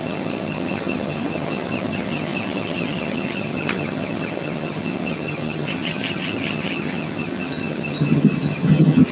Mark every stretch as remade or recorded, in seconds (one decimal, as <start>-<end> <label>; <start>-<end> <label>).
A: 0.0-9.1 remade